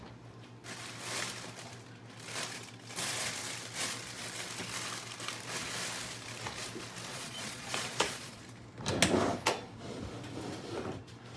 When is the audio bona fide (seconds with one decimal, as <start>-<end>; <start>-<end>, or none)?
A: 0.0-7.1; 8.4-11.4